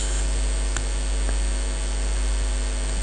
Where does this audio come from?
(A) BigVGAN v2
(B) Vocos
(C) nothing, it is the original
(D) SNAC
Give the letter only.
C